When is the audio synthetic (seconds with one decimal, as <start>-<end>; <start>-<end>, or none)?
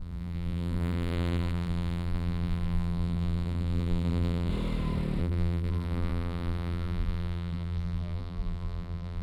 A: 0.0-4.5; 5.2-9.2